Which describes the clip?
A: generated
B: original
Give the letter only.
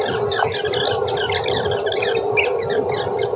B